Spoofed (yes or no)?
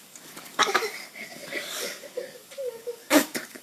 yes